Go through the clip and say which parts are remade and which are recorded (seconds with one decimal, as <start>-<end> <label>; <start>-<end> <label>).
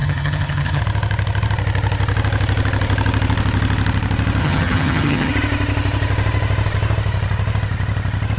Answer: 0.0-0.8 remade; 0.8-4.4 recorded; 4.4-5.3 remade; 5.3-8.4 recorded